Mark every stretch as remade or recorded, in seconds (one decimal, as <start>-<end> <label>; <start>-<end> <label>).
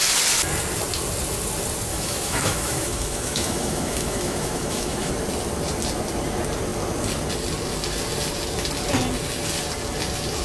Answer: 0.0-1.9 recorded; 1.9-5.1 remade; 5.1-10.4 recorded